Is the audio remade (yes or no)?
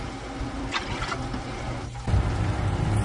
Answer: no